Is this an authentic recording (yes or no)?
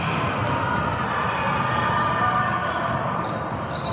yes